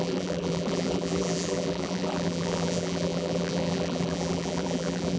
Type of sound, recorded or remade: remade